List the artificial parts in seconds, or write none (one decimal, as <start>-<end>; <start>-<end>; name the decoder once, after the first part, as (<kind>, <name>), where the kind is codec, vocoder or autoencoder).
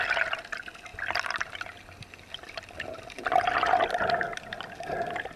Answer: none